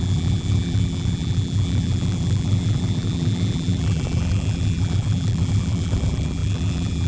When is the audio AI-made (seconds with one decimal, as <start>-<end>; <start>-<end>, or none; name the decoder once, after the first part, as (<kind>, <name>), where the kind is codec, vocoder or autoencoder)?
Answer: 0.0-7.1 (vocoder, BigVGAN v2)